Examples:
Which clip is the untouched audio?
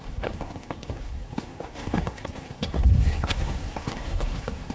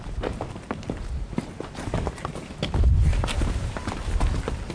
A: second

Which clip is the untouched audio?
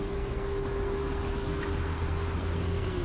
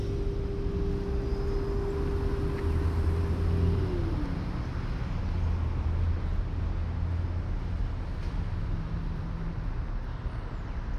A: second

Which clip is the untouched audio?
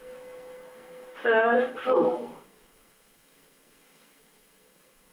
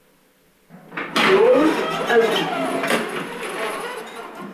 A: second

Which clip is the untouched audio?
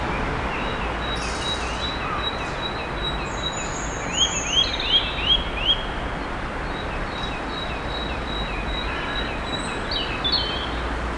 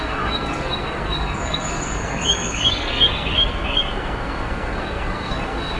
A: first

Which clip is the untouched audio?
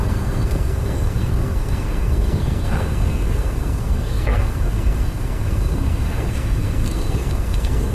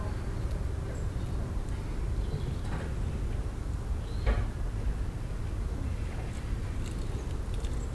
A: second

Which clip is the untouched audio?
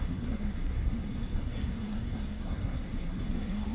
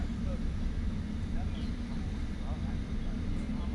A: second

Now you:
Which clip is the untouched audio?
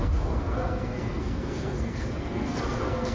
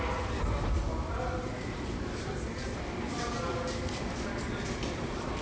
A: second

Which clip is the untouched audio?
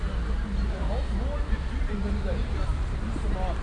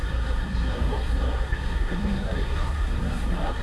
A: first